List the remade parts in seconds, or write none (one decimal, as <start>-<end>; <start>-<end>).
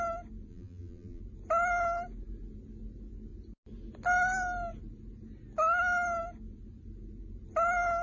0.5-1.2